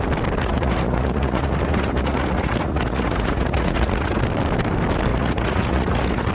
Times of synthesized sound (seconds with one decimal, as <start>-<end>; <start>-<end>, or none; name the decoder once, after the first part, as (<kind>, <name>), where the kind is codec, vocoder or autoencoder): 0.4-4.2 (vocoder, Vocos); 5.1-6.3